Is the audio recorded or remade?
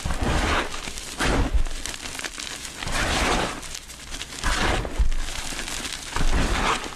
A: recorded